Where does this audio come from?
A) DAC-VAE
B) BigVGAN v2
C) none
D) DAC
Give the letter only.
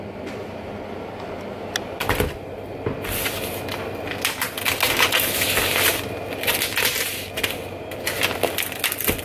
C